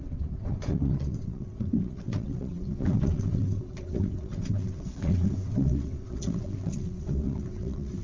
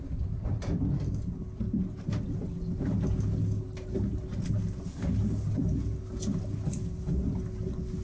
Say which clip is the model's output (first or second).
first